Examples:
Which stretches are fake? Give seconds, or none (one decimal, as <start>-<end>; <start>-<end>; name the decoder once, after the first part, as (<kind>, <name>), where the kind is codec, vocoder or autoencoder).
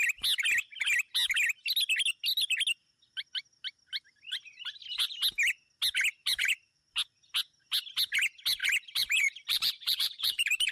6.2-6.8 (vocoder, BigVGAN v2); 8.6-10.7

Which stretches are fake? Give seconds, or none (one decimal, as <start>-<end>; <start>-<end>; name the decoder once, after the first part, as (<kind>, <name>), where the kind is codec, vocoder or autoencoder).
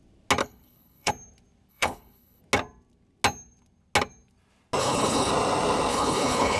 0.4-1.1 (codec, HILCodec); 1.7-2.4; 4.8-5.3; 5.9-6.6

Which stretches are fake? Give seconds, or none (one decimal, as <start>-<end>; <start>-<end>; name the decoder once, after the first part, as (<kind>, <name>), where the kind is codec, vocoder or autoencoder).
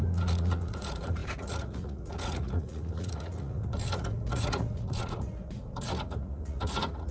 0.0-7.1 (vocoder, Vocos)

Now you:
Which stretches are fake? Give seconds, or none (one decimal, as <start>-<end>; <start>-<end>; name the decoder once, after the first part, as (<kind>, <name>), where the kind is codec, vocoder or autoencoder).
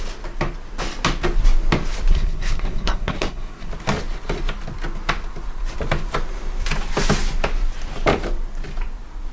2.1-3.7 (codec, SNAC)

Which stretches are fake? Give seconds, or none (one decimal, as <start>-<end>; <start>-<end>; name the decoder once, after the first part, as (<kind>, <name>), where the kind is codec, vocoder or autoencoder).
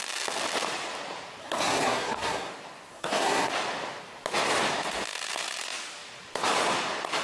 1.4-2.5 (codec, SNAC); 2.9-3.5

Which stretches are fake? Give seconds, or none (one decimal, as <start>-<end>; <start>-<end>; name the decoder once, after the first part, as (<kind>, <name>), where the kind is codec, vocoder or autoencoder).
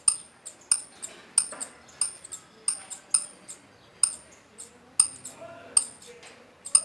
none